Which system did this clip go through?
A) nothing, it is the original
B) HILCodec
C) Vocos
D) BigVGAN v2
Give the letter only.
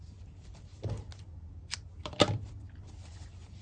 A